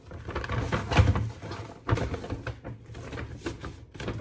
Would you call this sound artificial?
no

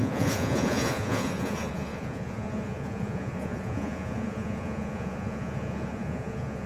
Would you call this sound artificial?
yes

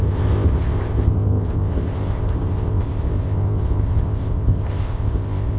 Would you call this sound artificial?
yes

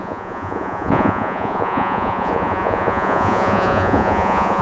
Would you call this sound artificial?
yes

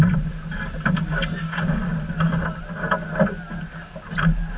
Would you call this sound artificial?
no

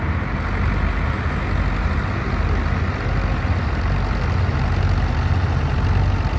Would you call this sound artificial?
no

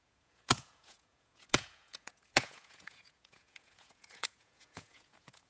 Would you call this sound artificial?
yes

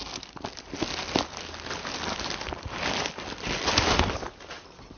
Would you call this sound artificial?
no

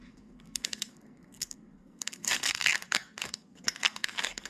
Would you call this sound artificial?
yes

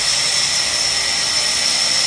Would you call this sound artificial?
no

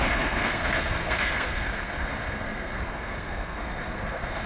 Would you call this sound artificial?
yes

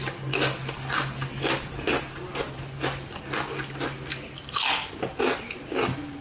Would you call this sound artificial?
no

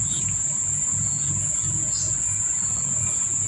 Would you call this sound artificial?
yes